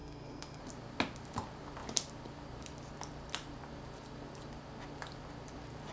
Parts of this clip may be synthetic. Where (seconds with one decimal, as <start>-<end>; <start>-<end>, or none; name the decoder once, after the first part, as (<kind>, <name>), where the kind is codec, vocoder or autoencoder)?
0.0-0.6 (codec, SNAC)

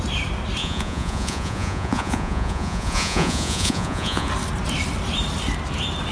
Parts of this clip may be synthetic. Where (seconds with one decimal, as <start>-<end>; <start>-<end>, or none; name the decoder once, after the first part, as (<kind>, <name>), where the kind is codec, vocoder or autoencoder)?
0.6-4.3 (vocoder, Vocos)

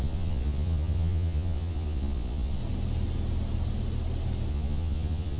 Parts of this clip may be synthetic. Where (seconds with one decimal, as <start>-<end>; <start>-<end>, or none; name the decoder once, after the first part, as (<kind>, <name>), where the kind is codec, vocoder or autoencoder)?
0.0-2.6 (vocoder, Vocos); 4.5-5.4

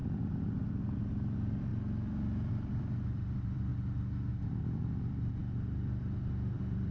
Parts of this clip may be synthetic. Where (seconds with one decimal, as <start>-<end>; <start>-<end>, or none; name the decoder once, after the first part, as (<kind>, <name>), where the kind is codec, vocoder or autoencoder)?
1.1-1.7 (vocoder, BigVGAN v2); 2.5-3.7; 4.3-6.9

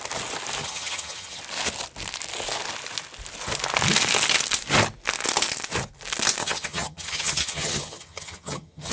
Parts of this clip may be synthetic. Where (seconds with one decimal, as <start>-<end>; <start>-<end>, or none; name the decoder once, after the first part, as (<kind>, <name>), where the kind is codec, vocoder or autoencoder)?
0.6-1.4 (vocoder, HiFi-GAN); 6.4-8.9

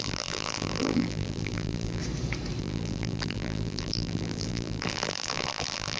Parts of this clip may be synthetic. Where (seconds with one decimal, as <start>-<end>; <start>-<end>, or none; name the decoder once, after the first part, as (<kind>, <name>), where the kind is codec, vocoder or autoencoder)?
0.0-2.0 (vocoder, BigVGAN v2); 2.6-6.0

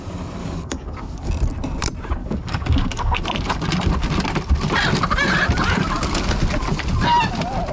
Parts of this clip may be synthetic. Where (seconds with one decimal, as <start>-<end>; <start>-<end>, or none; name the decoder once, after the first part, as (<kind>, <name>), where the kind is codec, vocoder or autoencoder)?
0.4-1.3 (codec, DAC); 2.2-3.2

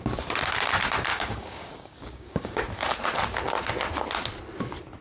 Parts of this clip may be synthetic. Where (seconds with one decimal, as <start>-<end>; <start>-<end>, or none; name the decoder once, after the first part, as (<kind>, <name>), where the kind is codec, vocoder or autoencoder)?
1.1-2.6 (codec, DAC)